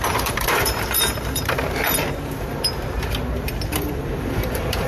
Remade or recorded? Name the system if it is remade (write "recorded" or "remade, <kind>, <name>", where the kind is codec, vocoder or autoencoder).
remade, vocoder, BigVGAN v2